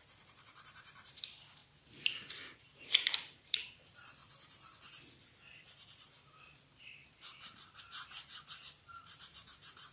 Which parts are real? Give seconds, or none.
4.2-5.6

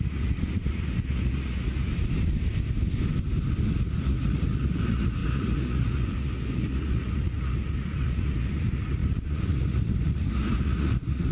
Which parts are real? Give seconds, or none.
1.9-3.7